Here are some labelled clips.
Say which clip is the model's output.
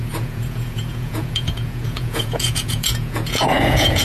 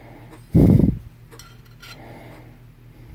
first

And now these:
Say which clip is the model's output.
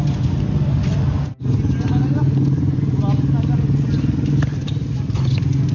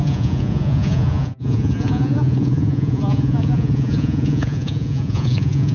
second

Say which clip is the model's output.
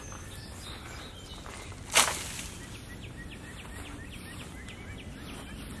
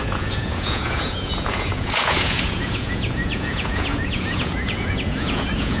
second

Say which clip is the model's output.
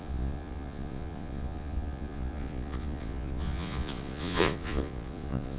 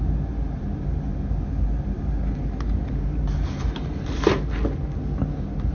first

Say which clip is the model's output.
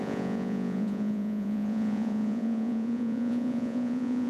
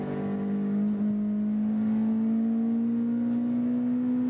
first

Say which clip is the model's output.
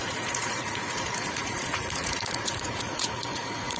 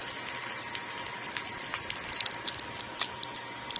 first